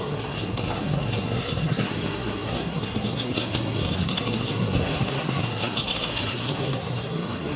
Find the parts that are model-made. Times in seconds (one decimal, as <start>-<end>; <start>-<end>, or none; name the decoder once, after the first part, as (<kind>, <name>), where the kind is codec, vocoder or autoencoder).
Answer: 0.0-7.6 (codec, SNAC)